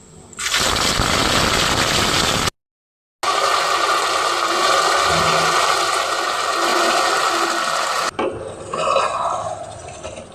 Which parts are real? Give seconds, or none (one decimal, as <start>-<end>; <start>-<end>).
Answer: 0.0-10.3